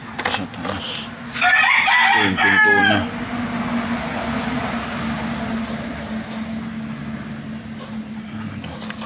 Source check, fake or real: real